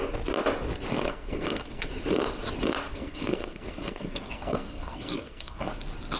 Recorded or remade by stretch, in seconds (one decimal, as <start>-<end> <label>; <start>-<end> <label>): 0.0-0.9 recorded; 0.9-1.9 remade; 1.9-2.9 recorded; 2.9-5.7 remade; 5.7-6.2 recorded